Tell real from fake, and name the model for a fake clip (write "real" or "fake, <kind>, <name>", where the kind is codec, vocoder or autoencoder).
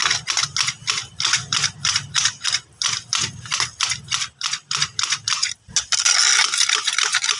real